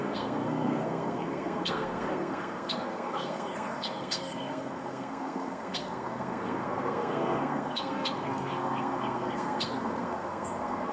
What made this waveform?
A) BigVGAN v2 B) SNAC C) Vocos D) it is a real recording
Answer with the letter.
B